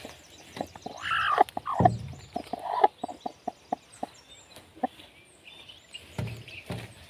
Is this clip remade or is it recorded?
recorded